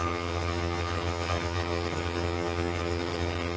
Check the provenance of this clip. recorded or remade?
remade